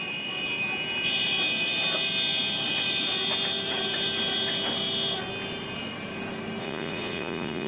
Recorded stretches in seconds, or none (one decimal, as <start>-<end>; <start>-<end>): 0.0-6.6